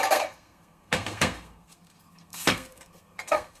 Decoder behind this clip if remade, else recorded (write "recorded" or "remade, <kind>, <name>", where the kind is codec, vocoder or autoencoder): remade, codec, SNAC